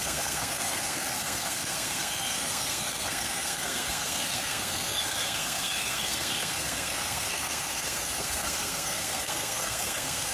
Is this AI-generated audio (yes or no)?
yes